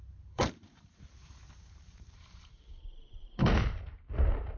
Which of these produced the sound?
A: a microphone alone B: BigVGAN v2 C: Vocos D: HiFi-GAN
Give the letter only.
B